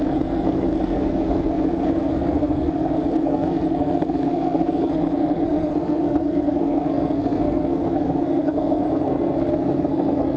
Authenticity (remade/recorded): remade